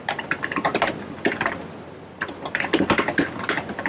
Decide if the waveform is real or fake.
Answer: real